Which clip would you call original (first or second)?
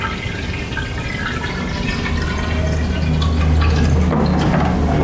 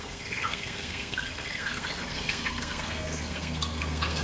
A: first